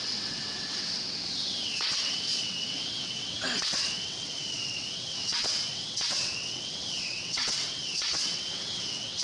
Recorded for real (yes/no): no